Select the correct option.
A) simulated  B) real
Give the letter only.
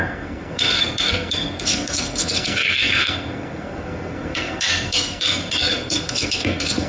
A